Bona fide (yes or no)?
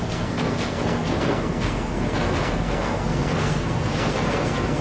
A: no